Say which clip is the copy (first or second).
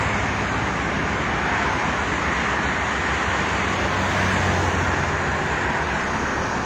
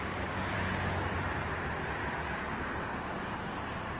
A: second